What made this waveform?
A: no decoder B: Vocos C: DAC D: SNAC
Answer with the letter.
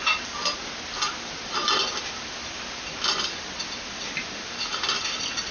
A